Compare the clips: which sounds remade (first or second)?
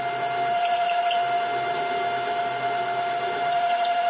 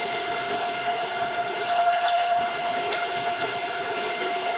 second